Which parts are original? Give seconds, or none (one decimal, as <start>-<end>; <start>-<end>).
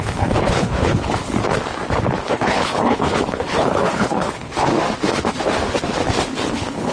1.3-2.3; 4.7-6.5